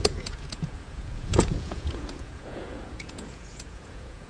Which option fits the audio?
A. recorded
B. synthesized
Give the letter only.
B